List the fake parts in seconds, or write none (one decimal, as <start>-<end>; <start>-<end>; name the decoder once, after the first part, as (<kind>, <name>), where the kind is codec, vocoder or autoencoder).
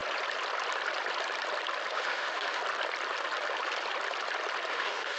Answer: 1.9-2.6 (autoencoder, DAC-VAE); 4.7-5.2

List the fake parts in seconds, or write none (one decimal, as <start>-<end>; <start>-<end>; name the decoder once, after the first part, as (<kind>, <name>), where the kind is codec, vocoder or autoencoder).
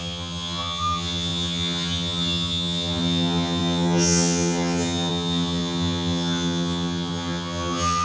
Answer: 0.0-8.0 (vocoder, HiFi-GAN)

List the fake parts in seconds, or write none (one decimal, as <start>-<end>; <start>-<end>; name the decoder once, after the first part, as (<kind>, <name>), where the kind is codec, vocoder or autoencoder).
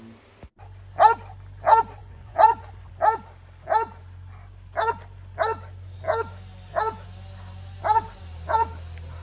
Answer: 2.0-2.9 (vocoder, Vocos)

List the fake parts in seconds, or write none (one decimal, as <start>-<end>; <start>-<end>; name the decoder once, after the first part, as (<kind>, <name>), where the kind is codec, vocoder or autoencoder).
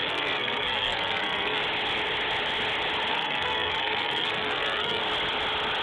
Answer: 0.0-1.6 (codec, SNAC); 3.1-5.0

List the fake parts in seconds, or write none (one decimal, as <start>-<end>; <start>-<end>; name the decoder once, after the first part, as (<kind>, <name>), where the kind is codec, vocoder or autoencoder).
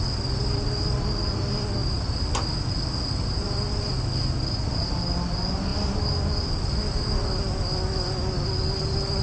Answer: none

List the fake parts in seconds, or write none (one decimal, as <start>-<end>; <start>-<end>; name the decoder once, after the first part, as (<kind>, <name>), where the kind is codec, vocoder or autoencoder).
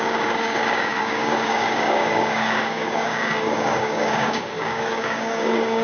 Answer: 0.0-5.8 (codec, DAC)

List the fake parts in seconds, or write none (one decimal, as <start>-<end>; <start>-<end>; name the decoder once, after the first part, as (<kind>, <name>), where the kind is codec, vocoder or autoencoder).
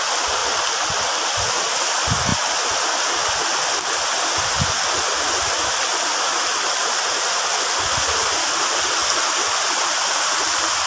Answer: none